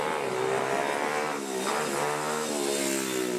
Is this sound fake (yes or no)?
no